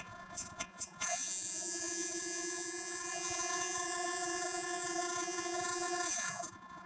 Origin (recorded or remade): remade